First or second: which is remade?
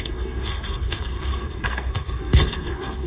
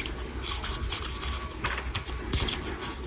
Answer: first